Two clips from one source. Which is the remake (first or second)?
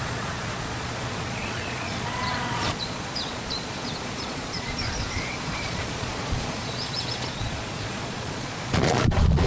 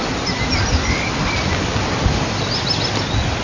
first